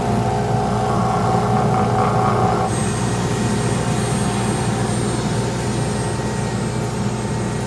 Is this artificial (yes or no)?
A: no